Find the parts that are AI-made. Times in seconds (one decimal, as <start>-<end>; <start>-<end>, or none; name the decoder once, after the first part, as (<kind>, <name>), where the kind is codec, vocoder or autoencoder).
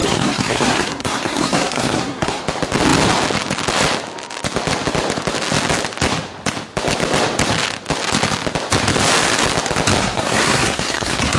0.0-2.4 (codec, SNAC); 10.0-11.4